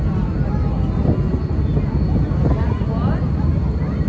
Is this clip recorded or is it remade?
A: recorded